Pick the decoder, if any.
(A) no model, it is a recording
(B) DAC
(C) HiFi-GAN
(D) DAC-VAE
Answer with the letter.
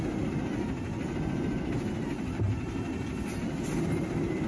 A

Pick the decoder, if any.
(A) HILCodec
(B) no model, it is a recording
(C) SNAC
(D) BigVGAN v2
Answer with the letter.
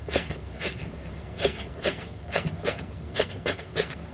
C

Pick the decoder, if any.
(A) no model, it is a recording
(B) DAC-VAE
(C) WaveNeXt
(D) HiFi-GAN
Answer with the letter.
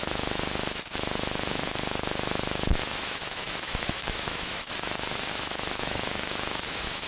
B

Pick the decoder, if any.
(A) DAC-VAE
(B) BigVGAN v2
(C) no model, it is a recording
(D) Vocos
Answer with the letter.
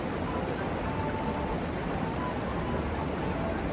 C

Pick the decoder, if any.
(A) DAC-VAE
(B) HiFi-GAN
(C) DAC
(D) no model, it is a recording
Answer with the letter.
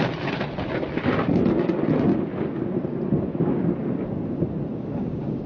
D